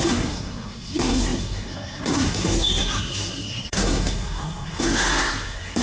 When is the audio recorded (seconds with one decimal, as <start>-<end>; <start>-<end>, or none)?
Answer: none

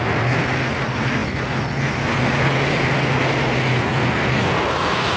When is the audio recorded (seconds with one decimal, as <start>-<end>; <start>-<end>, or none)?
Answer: 0.0-5.2

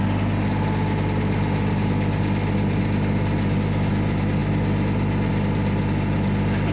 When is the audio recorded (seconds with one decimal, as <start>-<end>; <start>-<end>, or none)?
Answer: 0.0-6.7